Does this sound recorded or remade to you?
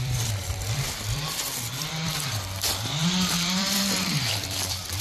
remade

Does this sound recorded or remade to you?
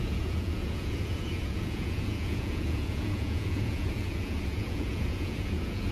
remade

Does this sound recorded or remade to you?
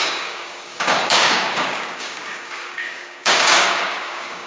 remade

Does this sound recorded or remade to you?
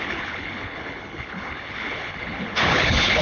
remade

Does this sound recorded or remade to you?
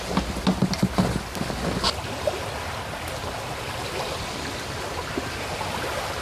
recorded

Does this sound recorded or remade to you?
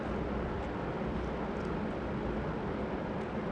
recorded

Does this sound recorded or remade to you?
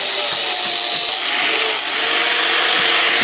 recorded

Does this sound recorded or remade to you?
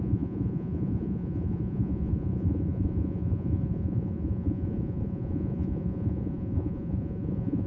remade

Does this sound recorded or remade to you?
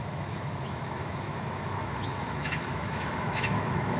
remade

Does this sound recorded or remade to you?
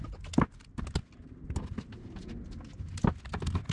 recorded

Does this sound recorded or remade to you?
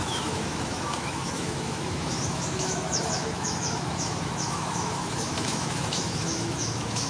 remade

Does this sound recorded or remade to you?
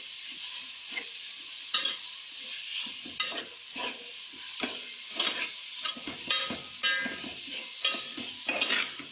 recorded